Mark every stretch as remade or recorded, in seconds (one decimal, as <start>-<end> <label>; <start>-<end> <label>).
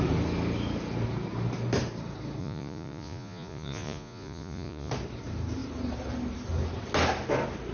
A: 0.0-2.4 recorded; 2.4-4.9 remade; 4.9-7.7 recorded